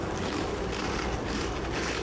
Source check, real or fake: fake